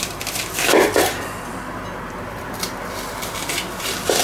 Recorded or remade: remade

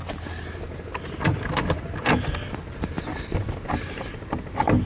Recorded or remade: recorded